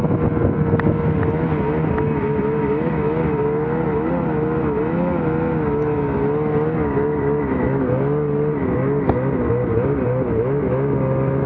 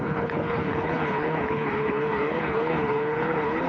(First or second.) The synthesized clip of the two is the second